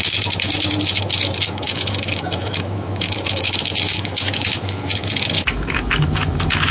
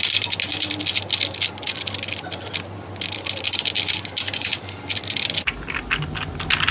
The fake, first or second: first